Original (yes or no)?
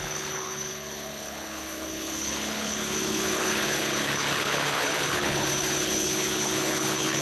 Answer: no